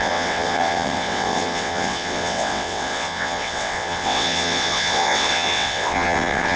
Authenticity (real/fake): fake